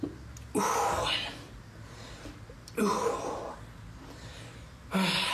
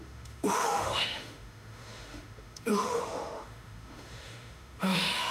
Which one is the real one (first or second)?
first